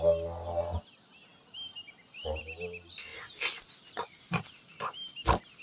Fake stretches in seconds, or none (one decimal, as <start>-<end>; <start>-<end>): none